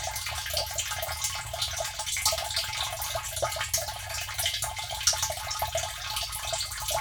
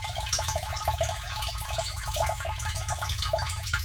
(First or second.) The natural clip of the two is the first